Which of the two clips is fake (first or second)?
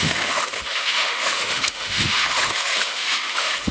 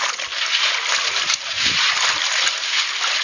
first